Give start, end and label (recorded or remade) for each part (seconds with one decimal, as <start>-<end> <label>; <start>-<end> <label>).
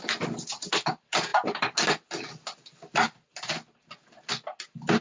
0.0-5.0 recorded